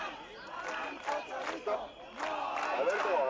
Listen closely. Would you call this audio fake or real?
real